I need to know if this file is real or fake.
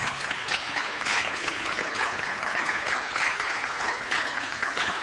fake